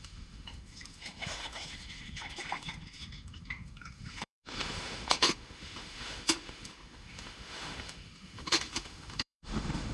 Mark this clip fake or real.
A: fake